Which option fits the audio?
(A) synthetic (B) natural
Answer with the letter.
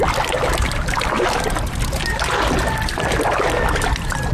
B